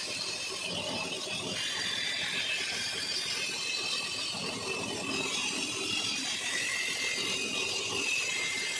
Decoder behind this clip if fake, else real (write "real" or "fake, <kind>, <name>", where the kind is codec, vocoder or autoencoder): real